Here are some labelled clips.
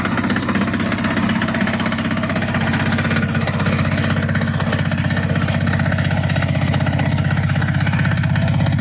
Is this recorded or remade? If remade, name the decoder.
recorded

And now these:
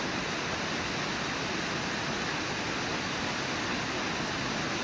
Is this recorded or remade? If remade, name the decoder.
recorded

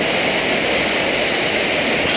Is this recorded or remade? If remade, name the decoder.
recorded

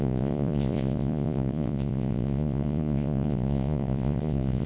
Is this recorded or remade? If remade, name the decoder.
remade, vocoder, Vocos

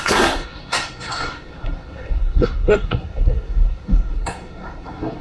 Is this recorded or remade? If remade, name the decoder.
remade, codec, SNAC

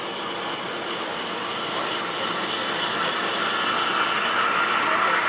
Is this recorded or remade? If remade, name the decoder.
recorded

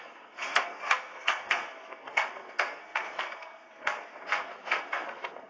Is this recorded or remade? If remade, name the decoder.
remade, codec, SNAC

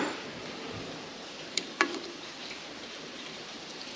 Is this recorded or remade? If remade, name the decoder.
remade, vocoder, BigVGAN v2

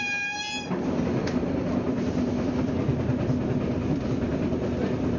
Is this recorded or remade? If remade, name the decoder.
recorded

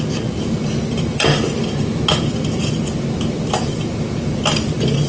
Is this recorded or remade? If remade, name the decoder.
recorded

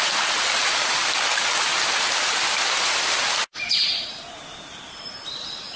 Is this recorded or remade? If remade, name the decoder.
recorded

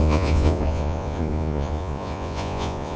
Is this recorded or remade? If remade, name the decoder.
remade, vocoder, Vocos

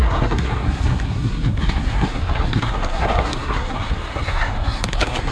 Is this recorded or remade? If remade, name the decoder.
remade, codec, SNAC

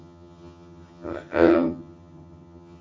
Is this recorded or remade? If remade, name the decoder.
remade, vocoder, HiFi-GAN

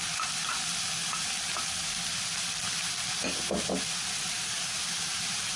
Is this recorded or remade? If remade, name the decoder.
recorded